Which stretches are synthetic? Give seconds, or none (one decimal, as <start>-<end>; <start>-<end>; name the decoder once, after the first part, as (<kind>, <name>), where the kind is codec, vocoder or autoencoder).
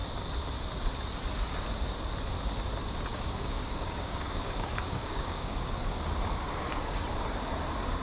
3.1-5.9 (codec, DAC); 6.4-7.0